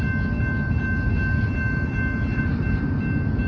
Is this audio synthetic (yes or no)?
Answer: no